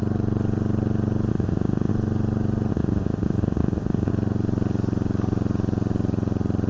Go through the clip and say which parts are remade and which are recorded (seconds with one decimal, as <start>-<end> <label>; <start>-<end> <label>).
0.0-1.3 recorded; 1.3-1.9 remade; 1.9-2.7 recorded; 2.7-4.1 remade; 4.1-6.7 recorded

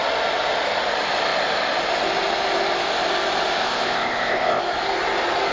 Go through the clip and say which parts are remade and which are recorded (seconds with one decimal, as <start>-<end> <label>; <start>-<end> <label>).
0.0-3.6 recorded; 3.6-4.6 remade; 4.6-5.5 recorded

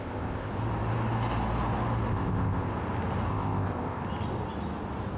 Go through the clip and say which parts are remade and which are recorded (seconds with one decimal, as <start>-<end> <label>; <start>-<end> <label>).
0.0-0.5 remade; 0.5-2.1 recorded; 2.1-2.7 remade; 2.7-3.3 recorded; 3.3-4.0 remade; 4.0-5.2 recorded